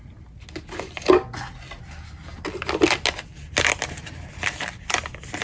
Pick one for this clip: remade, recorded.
recorded